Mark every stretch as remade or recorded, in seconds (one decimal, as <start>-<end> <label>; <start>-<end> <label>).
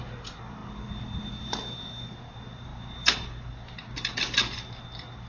0.0-5.3 recorded